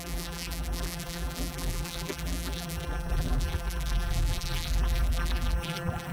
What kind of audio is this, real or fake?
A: fake